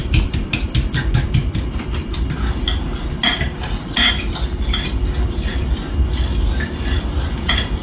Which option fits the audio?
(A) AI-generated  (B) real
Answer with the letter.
B